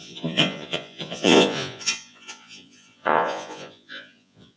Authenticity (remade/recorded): remade